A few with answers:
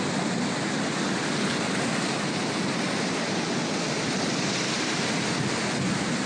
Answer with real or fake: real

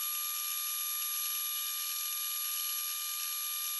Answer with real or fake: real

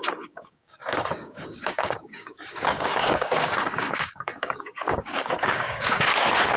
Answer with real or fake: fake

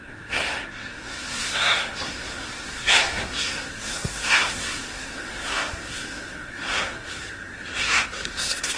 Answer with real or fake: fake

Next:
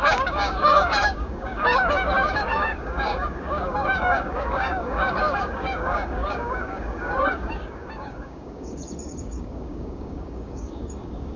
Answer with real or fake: fake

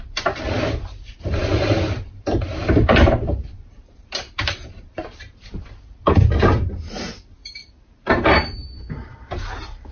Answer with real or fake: fake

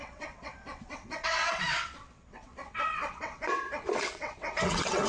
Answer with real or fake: fake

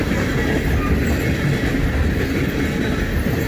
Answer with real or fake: real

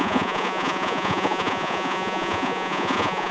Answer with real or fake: fake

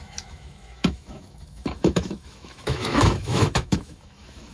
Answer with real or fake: fake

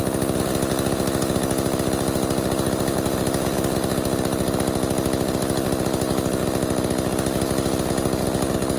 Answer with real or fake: real